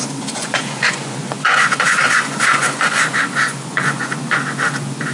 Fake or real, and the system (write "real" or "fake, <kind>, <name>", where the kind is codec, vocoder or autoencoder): fake, vocoder, Vocos